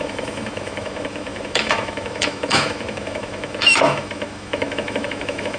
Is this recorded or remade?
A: remade